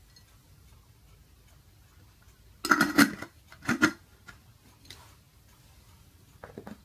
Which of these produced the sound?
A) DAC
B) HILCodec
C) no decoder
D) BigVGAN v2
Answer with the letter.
C